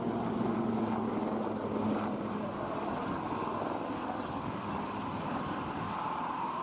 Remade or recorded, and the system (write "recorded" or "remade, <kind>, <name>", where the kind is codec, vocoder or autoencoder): recorded